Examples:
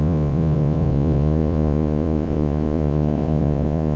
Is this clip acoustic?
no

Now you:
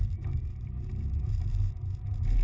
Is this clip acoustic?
no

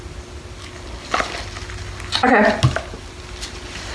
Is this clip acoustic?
yes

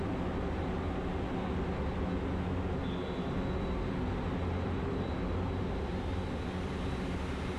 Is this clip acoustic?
yes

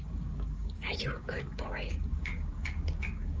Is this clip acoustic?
no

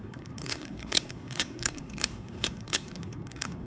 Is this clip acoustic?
no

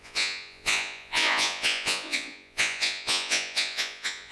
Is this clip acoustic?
no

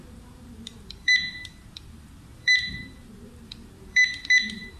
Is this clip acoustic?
no